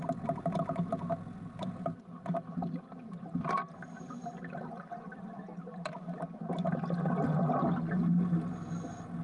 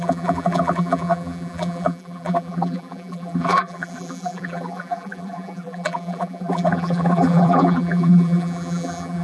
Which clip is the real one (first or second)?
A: first